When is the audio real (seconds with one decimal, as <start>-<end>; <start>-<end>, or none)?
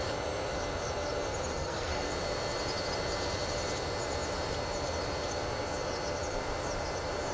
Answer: 0.0-1.5; 2.1-7.3